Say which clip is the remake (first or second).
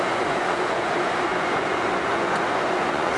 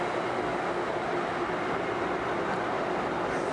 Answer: first